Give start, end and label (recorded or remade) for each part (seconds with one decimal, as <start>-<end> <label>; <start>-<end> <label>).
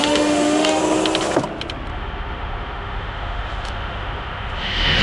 0.0-0.8 remade; 0.8-1.9 recorded; 1.9-5.0 remade